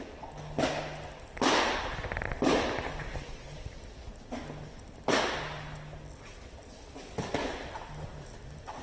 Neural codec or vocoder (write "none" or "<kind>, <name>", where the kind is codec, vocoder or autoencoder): none